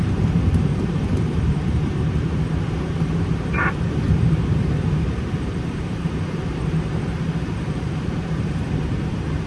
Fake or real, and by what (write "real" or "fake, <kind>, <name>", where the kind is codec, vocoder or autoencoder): fake, vocoder, BigVGAN v2